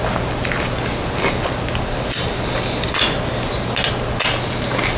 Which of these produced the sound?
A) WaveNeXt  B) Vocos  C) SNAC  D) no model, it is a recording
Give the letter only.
D